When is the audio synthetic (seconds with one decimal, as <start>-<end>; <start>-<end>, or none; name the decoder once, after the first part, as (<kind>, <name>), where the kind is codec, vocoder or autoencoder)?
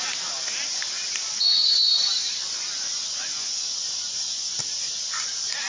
1.2-4.6 (vocoder, Vocos)